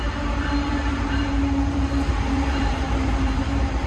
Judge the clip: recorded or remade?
remade